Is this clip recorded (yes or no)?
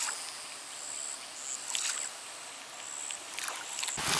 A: yes